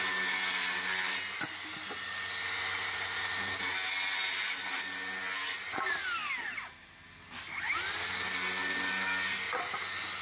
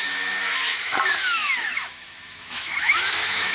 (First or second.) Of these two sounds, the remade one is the second